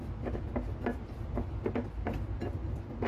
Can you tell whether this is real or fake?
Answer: real